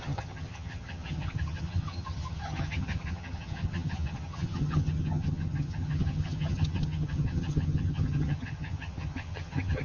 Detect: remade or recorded remade